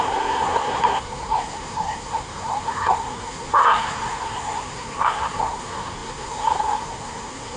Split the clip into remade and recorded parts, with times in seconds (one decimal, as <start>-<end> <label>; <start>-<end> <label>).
0.0-7.6 remade